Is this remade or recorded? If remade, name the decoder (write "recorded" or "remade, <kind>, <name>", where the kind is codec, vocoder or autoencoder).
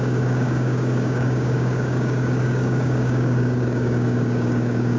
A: remade, codec, DAC